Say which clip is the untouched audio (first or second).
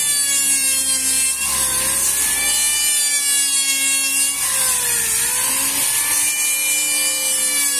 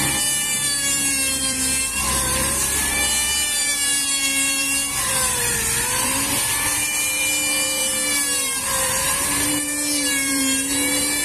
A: first